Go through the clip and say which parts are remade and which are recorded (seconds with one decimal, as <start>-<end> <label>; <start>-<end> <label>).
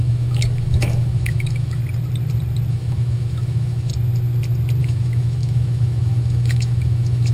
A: 0.0-1.8 remade; 1.8-2.7 recorded; 2.7-3.9 remade; 3.9-4.8 recorded; 4.8-7.3 remade